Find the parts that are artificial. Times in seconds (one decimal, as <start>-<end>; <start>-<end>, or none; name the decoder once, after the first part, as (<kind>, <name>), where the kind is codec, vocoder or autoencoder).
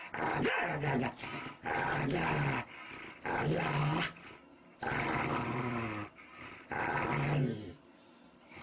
none